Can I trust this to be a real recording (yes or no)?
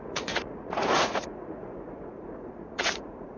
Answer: no